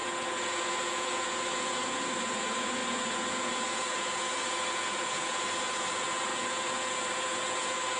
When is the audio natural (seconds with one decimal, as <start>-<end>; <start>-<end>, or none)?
none